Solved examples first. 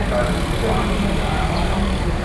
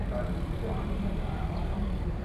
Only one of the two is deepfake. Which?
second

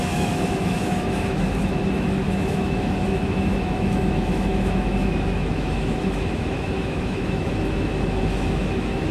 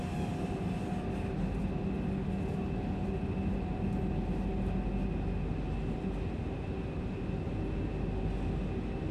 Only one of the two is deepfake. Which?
first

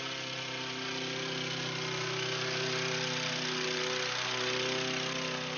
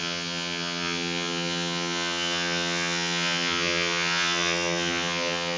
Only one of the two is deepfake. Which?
second